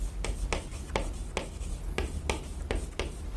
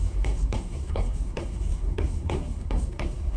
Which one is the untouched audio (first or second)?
first